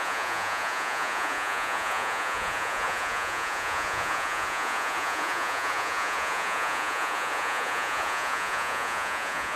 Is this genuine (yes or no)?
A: no